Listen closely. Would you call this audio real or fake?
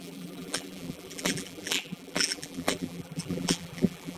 fake